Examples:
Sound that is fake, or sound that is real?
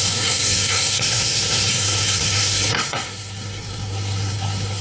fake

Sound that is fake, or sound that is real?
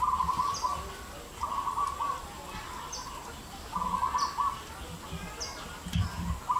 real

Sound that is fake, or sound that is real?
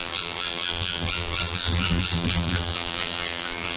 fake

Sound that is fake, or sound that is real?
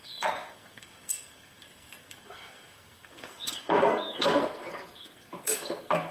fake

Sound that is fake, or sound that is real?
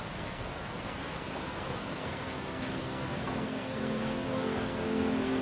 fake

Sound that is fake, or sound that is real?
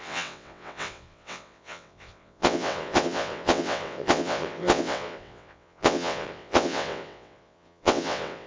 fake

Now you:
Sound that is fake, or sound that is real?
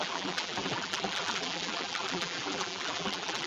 fake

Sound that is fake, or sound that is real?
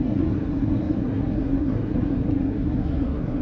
fake